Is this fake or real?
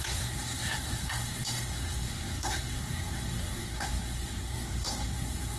fake